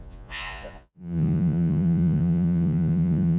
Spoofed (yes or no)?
yes